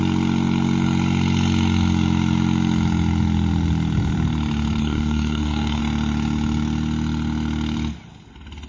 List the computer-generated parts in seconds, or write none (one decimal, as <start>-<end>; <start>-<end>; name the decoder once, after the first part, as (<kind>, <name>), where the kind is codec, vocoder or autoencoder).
4.8-5.8 (codec, DAC)